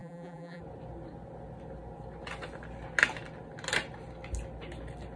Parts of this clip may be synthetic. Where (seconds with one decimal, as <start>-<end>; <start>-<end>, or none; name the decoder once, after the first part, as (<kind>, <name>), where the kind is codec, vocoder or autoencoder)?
0.0-0.6 (vocoder, BigVGAN v2)